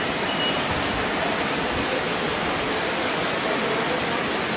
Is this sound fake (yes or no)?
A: no